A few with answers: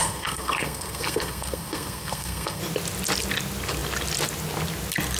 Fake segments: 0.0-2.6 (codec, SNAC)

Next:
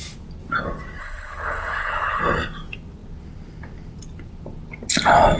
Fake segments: 1.0-2.2 (codec, HILCodec)

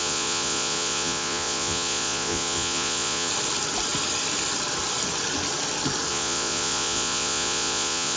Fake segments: 0.0-3.3 (vocoder, Vocos); 6.1-8.2

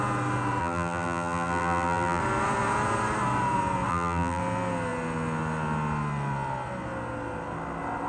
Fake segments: 0.6-2.2 (vocoder, BigVGAN v2); 3.9-4.4

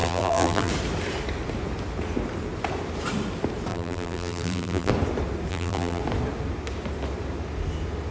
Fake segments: 0.0-0.7 (vocoder, BigVGAN v2); 3.7-4.9; 5.5-6.0

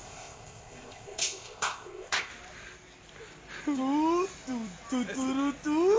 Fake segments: 0.0-2.3 (codec, ZipCodec)

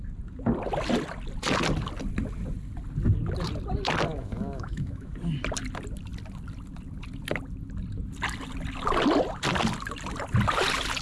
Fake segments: 4.1-5.1 (autoencoder, DAC-VAE)

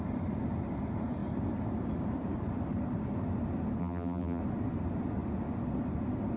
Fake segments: 3.8-4.4 (vocoder, BigVGAN v2)